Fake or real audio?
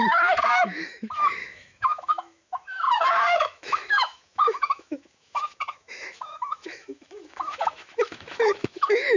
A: fake